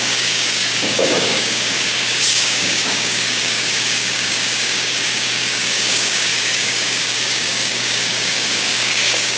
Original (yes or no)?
no